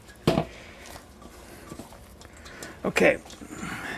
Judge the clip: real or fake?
real